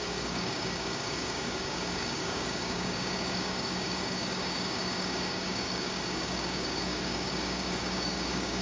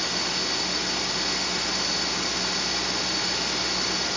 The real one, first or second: second